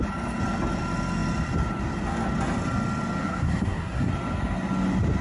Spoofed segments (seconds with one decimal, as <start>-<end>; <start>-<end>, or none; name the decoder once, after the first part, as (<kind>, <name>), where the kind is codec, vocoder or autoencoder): 3.2-4.1 (codec, SNAC)